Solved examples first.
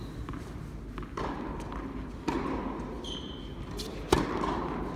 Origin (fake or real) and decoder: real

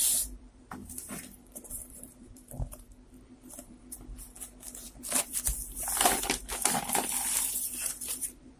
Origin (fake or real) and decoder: fake, vocoder, BigVGAN v2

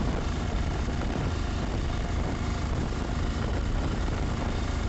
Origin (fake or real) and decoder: fake, vocoder, BigVGAN v2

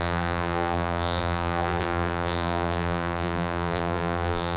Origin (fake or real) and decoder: fake, vocoder, BigVGAN v2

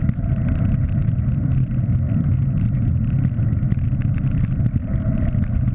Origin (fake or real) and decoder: real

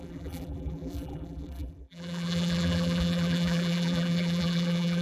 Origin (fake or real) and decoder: fake, vocoder, BigVGAN v2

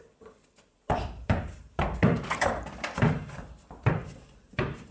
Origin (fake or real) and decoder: fake, vocoder, BigVGAN v2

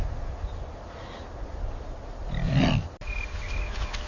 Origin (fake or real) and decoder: real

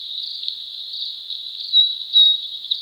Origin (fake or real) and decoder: fake, vocoder, BigVGAN v2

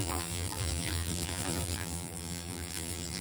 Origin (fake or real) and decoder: fake, vocoder, BigVGAN v2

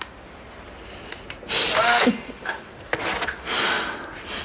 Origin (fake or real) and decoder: real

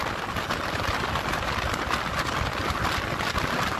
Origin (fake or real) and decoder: real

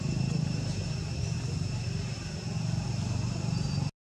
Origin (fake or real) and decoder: real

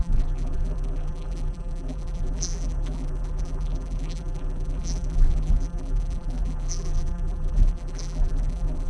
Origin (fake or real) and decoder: fake, vocoder, BigVGAN v2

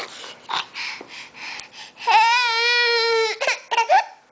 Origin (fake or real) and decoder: real